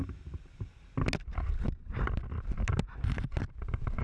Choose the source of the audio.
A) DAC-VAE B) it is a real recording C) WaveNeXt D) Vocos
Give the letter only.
B